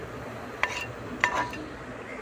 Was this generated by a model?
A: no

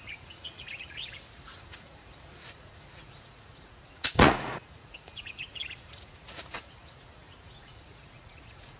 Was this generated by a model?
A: yes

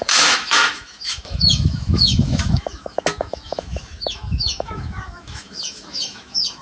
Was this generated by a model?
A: yes